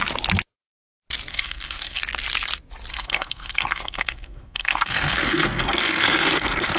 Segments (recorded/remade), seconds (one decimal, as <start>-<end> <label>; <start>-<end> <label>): 0.0-1.3 recorded; 1.3-2.0 remade; 2.0-2.9 recorded; 2.9-6.8 remade